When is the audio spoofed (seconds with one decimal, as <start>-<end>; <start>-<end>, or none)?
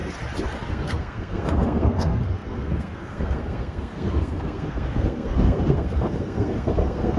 0.7-7.2